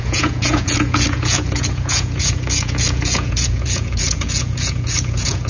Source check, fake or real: fake